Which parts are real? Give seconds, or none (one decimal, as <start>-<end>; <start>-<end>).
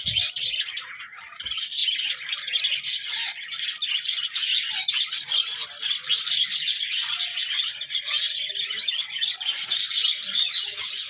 0.0-11.1